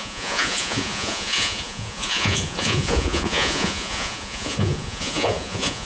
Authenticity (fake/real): fake